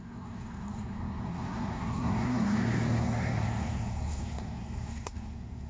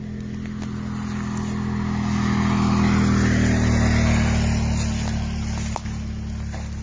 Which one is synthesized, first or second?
first